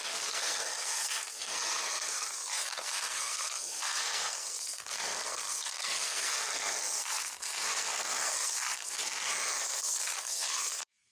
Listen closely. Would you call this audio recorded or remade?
remade